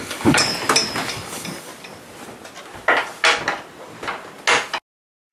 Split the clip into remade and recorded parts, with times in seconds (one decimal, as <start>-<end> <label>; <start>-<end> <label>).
0.0-0.5 remade; 0.5-1.1 recorded; 1.1-1.7 remade; 1.7-5.3 recorded